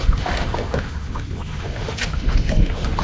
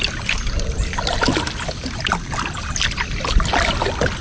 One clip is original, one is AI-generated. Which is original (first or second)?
second